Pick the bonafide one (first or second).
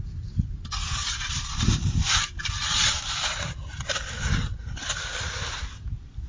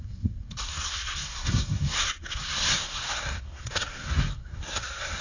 first